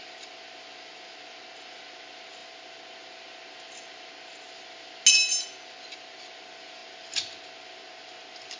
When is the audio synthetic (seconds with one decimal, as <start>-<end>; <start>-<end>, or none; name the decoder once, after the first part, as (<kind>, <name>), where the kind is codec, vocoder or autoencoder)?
none